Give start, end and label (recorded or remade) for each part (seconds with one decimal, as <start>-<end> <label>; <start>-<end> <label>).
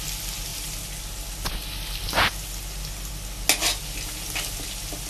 0.0-5.1 recorded